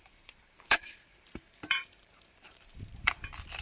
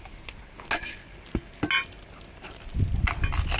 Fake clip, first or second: first